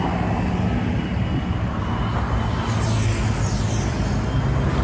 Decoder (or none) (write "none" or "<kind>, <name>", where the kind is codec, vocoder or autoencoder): none